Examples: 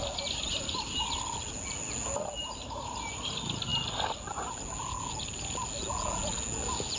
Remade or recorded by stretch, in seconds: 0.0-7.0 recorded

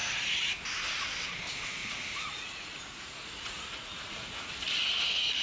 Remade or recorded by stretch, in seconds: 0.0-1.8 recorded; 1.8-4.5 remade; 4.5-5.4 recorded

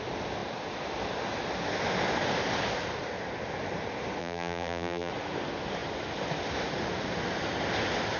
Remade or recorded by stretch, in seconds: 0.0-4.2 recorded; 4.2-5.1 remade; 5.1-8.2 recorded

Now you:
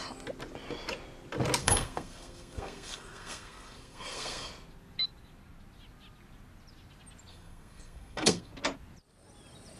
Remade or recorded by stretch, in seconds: 0.0-1.6 recorded; 1.6-4.5 remade; 4.5-7.3 recorded; 7.3-8.5 remade; 8.5-9.8 recorded

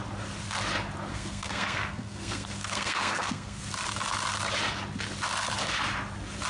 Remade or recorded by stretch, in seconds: 0.0-1.1 recorded; 1.1-3.6 remade; 3.6-6.5 recorded

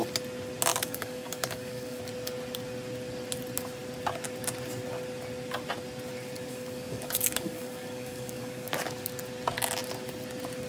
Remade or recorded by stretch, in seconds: 0.0-0.7 recorded; 0.7-2.0 remade; 2.0-6.5 recorded; 6.5-8.7 remade; 8.7-10.7 recorded

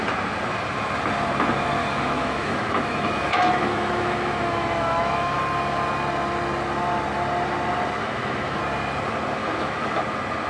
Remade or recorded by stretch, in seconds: 0.0-1.8 recorded; 1.8-5.4 remade; 5.4-8.0 recorded; 8.0-8.6 remade; 8.6-9.4 recorded; 9.4-10.0 remade; 10.0-10.5 recorded

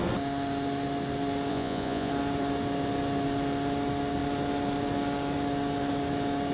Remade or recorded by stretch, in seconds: 0.0-1.5 recorded; 1.5-2.1 remade; 2.1-6.5 recorded